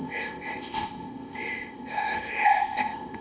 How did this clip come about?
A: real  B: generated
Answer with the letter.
B